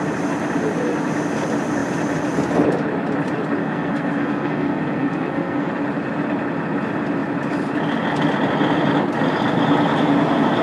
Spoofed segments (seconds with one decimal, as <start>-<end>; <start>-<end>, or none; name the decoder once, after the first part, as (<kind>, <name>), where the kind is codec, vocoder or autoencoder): 3.6-5.7 (codec, SNAC)